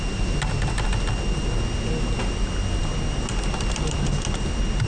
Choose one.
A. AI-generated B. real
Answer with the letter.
B